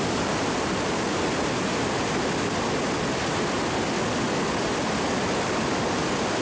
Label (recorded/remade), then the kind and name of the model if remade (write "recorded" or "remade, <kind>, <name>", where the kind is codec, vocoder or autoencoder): recorded